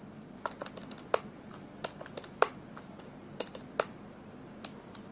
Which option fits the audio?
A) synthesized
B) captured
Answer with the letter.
B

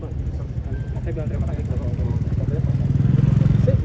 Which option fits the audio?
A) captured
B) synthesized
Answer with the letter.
A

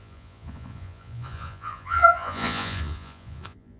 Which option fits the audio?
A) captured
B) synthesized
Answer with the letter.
B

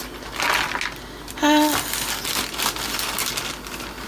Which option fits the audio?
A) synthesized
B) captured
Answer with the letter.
B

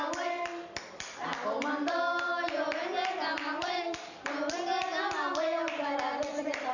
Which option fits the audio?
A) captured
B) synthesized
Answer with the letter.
A